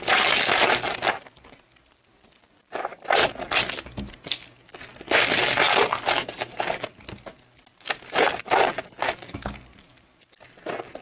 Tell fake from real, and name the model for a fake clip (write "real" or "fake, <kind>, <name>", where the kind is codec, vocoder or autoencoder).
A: real